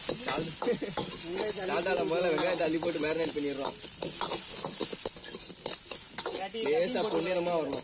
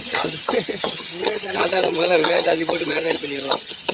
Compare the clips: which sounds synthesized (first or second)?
second